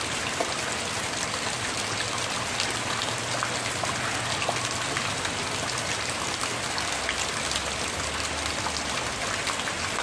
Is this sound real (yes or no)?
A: yes